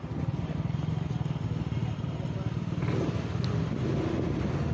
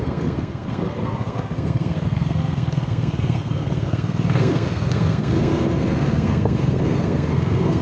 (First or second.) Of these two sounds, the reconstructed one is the second